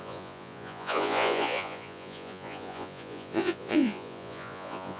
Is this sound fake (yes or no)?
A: yes